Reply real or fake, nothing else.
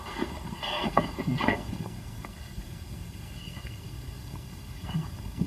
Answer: fake